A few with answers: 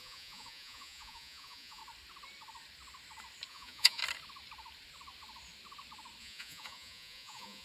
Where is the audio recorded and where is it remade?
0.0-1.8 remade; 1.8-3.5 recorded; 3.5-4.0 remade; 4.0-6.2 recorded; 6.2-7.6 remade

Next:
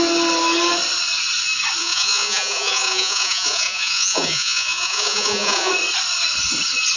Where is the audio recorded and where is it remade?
0.0-1.8 recorded; 1.8-5.7 remade; 5.7-7.0 recorded

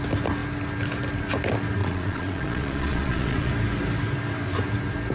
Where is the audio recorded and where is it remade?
0.0-1.8 recorded; 1.8-3.5 remade; 3.5-5.1 recorded

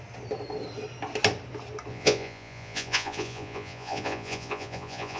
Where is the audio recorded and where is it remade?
0.0-1.9 recorded; 1.9-5.2 remade

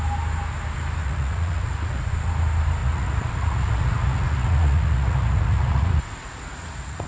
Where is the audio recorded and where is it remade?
0.0-1.0 recorded; 1.0-2.1 remade; 2.1-2.8 recorded; 2.8-7.1 remade